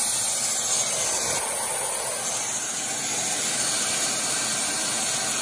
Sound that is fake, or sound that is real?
real